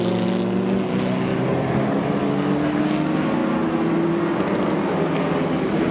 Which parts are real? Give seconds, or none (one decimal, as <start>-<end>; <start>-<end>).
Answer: 0.0-1.3; 2.1-5.9